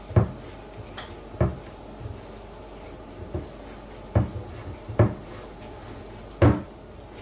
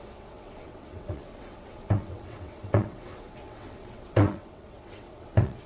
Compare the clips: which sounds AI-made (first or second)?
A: second